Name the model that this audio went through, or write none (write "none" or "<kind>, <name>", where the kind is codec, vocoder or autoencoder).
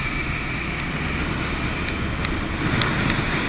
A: none